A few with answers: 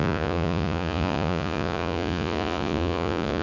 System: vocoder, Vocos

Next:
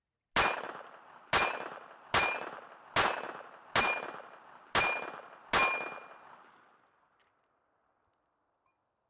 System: none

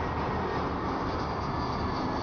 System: none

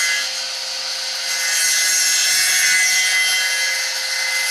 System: none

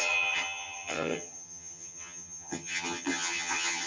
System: vocoder, HiFi-GAN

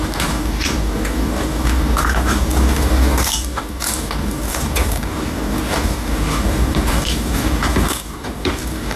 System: codec, DAC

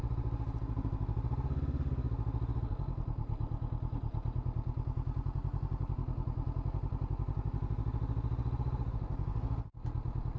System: none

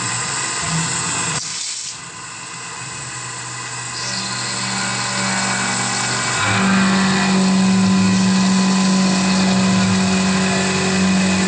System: none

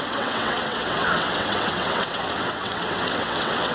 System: vocoder, WaveNeXt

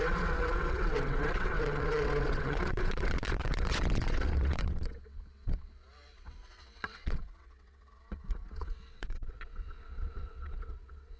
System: vocoder, WaveNeXt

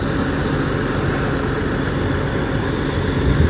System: none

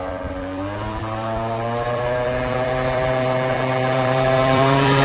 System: vocoder, BigVGAN v2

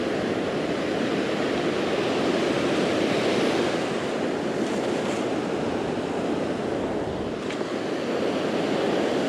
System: none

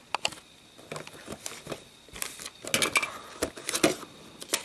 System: none